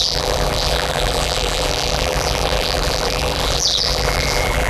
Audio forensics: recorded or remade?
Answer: remade